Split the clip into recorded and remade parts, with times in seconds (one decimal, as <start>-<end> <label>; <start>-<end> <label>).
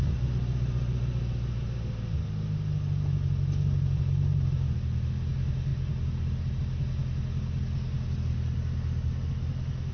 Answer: 0.0-5.7 recorded; 5.7-6.6 remade; 6.6-9.9 recorded